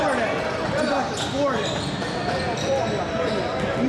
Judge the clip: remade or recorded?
recorded